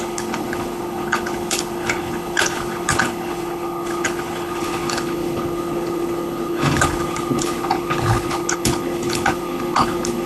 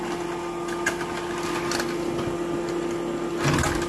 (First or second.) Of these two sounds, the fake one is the first